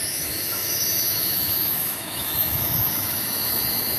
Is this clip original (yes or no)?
no